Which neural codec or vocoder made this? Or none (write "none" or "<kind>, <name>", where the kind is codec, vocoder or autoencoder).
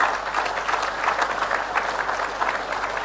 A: none